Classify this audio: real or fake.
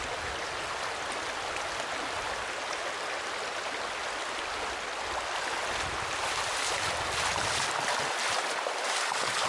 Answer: real